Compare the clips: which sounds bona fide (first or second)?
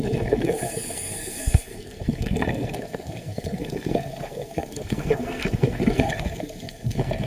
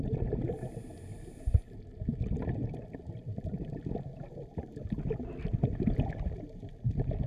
second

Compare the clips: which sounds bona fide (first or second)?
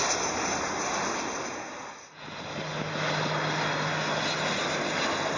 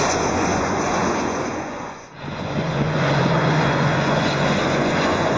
first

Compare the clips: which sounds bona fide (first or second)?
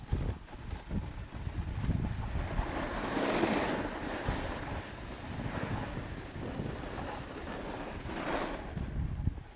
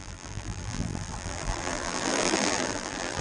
first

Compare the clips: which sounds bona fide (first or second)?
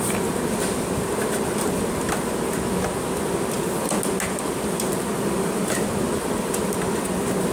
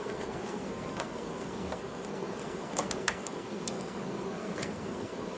first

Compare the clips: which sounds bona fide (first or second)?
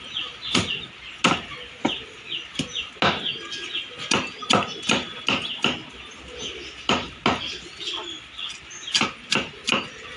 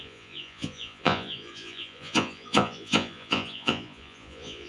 first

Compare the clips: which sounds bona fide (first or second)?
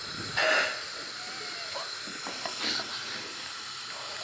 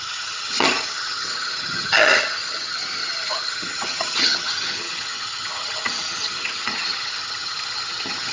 first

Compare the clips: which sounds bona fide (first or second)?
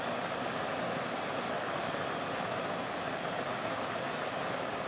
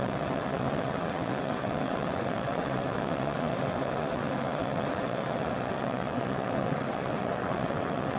first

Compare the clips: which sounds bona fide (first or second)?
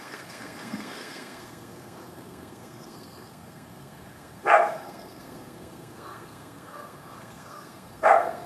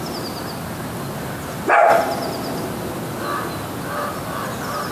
second